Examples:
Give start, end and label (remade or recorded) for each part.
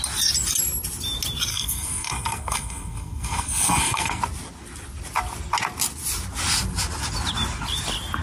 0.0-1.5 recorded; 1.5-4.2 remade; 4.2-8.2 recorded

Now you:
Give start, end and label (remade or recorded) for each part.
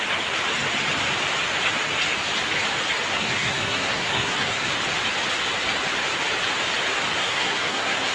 0.0-3.1 recorded; 3.1-4.7 remade; 4.7-7.2 recorded; 7.2-8.1 remade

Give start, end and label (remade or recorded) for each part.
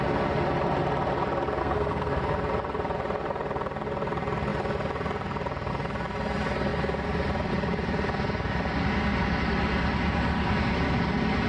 0.0-1.6 recorded; 1.6-2.2 remade; 2.2-11.5 recorded